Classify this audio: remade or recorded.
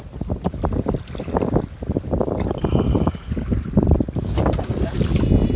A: recorded